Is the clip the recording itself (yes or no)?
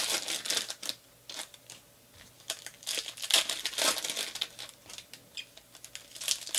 yes